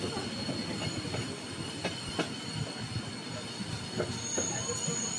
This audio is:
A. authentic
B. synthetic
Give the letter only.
A